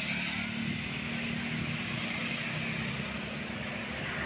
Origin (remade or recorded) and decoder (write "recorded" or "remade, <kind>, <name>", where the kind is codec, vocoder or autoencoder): recorded